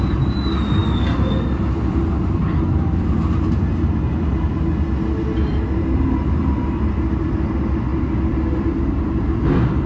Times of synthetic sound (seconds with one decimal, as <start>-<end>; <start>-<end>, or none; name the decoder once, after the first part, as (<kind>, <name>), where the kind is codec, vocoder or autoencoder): none